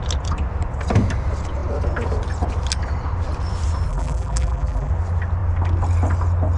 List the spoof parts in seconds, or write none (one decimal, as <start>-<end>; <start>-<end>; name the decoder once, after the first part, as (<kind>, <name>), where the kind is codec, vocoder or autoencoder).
3.9-4.9 (vocoder, BigVGAN v2)